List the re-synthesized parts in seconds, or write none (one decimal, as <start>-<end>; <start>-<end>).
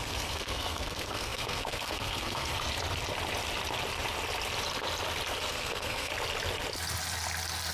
0.0-2.5; 5.5-6.1